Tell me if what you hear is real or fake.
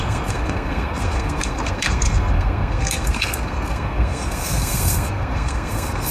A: fake